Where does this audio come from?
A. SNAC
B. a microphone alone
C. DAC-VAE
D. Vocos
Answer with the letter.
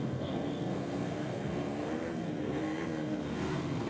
A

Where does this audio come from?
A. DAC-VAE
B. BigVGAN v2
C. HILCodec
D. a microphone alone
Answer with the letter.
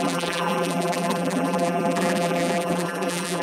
B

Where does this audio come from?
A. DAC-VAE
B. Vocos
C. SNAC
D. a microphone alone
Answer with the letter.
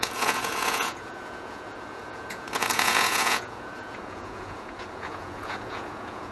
B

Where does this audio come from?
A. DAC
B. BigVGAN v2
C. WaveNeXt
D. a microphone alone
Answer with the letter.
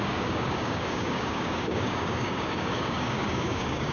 A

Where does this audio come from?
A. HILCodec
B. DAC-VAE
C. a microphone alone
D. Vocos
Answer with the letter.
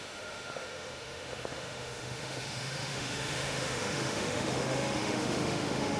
B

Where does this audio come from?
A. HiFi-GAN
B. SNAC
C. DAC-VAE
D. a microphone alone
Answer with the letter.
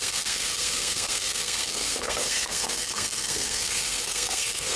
B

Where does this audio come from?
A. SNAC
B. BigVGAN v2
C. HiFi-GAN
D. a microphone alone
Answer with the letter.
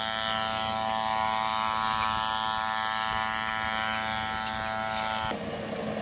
D